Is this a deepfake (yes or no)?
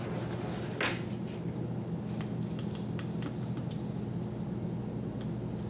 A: no